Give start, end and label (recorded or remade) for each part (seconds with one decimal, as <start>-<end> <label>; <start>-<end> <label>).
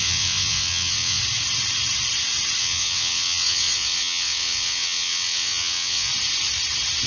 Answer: 0.0-1.2 remade; 1.2-2.6 recorded; 2.6-6.1 remade; 6.1-7.1 recorded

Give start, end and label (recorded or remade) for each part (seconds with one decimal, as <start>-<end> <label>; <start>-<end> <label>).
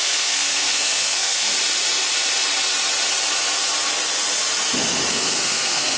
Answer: 0.0-1.5 remade; 1.5-5.1 recorded; 5.1-6.0 remade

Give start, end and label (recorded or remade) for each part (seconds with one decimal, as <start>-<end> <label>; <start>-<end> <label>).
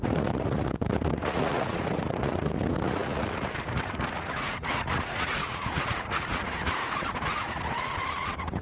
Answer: 0.0-8.6 remade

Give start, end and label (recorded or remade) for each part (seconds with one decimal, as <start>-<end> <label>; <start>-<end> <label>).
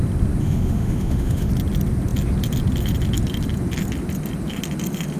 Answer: 0.0-0.4 recorded; 0.4-1.5 remade; 1.5-5.2 recorded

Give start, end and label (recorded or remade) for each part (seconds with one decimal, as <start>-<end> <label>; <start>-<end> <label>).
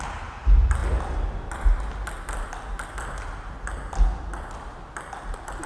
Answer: 0.0-5.7 recorded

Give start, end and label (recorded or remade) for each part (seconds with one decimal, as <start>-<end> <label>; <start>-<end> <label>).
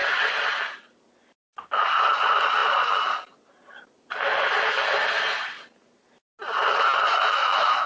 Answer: 0.0-7.1 recorded; 7.1-7.9 remade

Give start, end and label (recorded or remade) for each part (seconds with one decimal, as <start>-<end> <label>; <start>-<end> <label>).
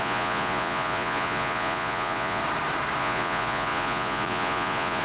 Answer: 0.0-2.4 remade; 2.4-3.0 recorded; 3.0-5.0 remade